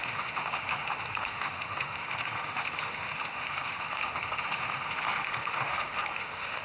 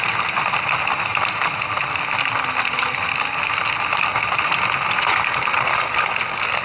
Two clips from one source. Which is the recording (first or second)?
second